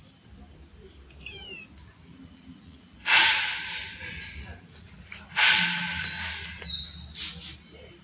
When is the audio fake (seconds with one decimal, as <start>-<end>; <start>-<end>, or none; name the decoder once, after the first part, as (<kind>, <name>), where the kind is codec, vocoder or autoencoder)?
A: 2.1-3.4 (vocoder, Vocos); 3.9-5.0